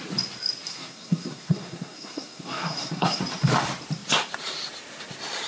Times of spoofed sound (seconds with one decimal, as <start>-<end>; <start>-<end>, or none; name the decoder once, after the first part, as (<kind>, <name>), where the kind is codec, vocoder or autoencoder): 0.7-3.2 (codec, SNAC)